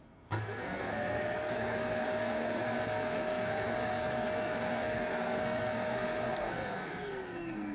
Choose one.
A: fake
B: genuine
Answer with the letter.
A